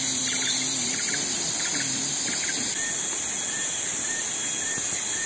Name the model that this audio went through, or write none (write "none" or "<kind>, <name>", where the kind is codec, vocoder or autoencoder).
none